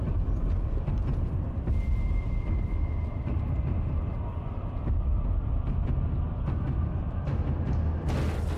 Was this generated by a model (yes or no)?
no